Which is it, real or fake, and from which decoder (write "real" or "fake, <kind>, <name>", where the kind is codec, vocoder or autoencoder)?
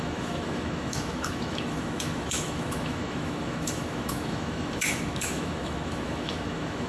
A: fake, autoencoder, DAC-VAE